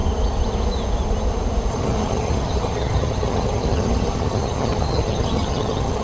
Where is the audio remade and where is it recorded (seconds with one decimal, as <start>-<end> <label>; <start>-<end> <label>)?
0.0-1.7 recorded; 1.7-6.0 remade